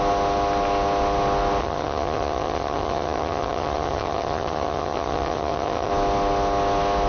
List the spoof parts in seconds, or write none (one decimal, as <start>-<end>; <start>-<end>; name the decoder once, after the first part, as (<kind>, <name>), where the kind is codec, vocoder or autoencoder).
1.6-5.9 (vocoder, HiFi-GAN)